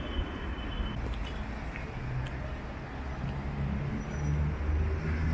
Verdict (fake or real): real